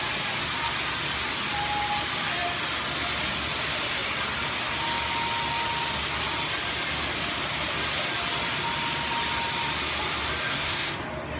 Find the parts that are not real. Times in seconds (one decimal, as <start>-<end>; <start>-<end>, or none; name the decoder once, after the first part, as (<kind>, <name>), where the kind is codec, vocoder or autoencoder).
10.5-11.0 (codec, SNAC)